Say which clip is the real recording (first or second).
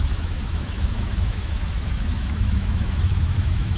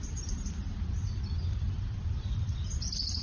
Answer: second